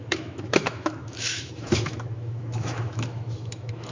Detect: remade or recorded remade